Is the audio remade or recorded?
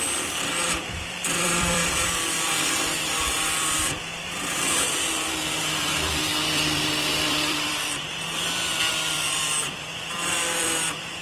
remade